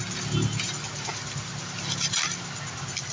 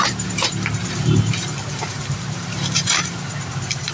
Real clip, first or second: first